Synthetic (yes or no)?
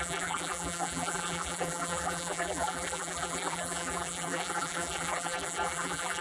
yes